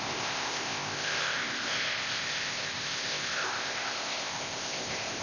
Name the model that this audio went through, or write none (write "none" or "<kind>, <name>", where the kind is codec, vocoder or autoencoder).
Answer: codec, ZipCodec